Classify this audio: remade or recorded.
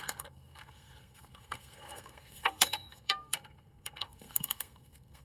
remade